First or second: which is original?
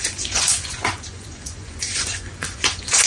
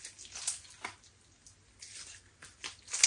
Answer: second